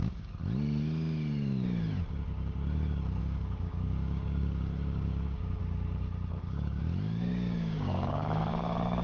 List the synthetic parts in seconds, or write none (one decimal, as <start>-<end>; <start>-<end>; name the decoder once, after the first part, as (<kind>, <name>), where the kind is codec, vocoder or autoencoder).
0.0-0.4 (codec, DAC); 3.2-5.6; 6.3-6.8; 7.3-9.0